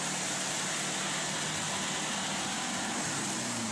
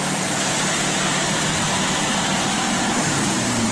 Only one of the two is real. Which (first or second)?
first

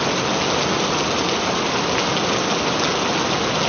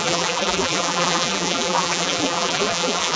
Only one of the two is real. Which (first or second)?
first